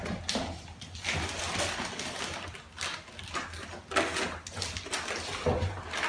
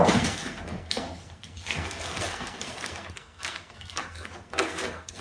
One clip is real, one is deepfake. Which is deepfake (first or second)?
second